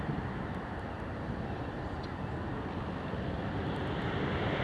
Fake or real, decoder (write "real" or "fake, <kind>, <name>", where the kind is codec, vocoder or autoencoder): real